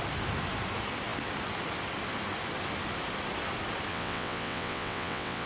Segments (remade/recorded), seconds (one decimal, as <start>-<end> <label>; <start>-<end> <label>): 0.0-3.9 recorded; 3.9-5.5 remade